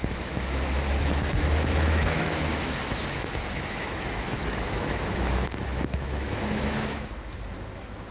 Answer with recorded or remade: remade